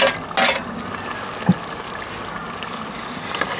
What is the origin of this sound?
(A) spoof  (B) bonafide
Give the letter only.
B